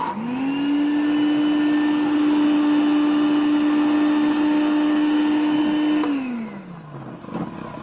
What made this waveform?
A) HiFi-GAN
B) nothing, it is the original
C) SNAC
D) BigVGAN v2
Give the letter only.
B